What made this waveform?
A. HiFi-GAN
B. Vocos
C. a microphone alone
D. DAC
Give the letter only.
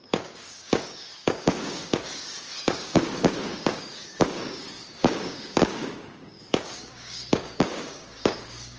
D